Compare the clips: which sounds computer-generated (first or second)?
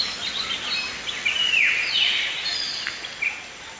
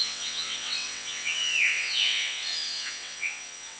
second